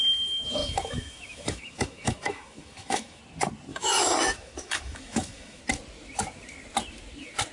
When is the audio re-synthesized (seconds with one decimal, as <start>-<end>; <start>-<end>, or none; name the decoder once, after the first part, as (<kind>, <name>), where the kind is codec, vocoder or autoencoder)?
0.6-3.2 (autoencoder, DAC-VAE); 3.7-5.6